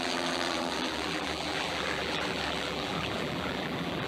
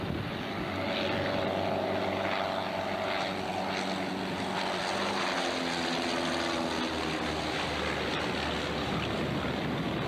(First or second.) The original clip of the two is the second